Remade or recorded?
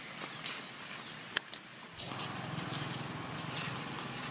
recorded